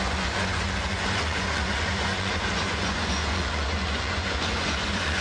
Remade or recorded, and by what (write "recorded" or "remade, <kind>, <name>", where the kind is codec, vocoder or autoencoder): remade, vocoder, Vocos